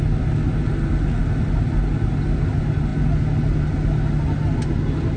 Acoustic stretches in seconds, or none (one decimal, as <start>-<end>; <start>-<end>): 0.0-5.2